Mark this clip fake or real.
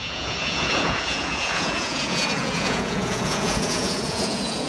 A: fake